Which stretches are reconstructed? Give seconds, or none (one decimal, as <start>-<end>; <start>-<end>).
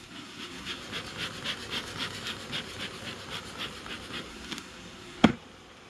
0.0-0.8; 4.3-5.3